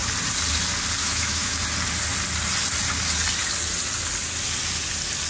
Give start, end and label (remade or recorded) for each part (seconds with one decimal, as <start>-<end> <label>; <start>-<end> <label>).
0.0-1.0 recorded; 1.0-1.6 remade; 1.6-5.3 recorded